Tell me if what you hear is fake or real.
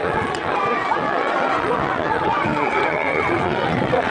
fake